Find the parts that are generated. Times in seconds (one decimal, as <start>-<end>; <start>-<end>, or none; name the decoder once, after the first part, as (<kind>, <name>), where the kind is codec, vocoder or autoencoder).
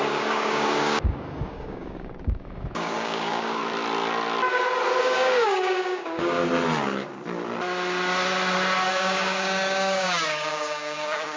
0.0-3.6 (codec, DAC); 5.0-6.4; 8.9-11.4